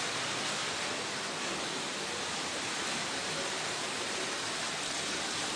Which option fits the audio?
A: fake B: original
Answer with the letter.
B